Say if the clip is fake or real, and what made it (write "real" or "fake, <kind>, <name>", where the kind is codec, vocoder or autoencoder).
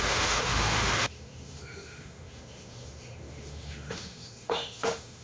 fake, autoencoder, DAC-VAE